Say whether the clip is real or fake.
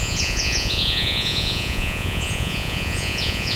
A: fake